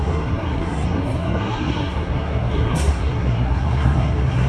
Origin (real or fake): fake